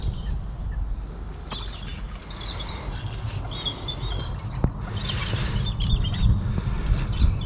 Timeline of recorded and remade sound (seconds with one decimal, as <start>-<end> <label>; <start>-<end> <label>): 0.0-7.5 recorded